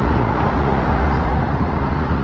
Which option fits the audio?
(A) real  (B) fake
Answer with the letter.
B